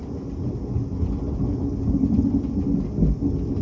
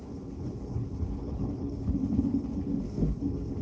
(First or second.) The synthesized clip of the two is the second